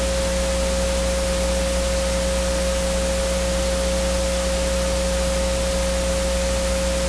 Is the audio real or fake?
real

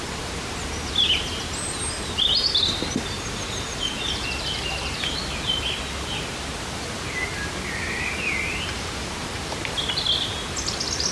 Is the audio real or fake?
real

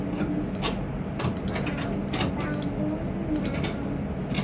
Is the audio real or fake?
real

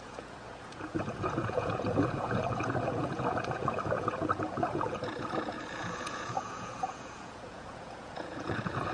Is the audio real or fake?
fake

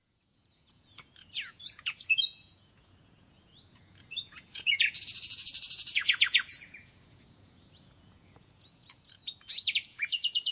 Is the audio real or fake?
fake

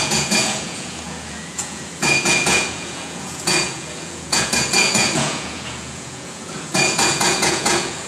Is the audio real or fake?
fake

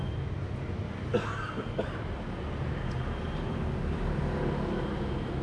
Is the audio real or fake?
real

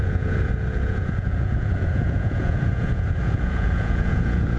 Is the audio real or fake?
fake